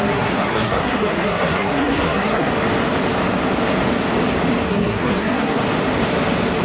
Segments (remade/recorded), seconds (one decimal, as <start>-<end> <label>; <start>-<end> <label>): 0.0-2.5 remade; 2.5-4.7 recorded; 4.7-5.6 remade; 5.6-6.6 recorded